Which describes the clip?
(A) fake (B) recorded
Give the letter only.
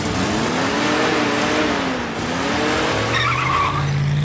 B